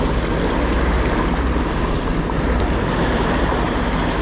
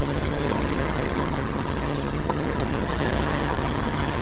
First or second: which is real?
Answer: first